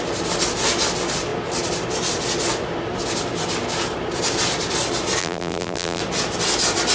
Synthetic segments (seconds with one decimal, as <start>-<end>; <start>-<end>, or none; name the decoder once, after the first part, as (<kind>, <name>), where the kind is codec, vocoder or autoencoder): 5.2-6.0 (vocoder, BigVGAN v2)